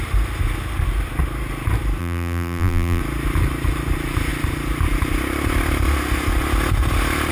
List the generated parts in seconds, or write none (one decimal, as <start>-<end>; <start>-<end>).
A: 2.0-3.0